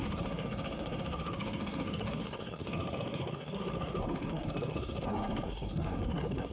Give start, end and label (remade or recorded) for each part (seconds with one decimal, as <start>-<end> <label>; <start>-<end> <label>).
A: 0.0-6.5 remade